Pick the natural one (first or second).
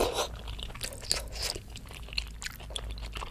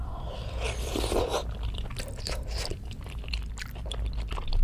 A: first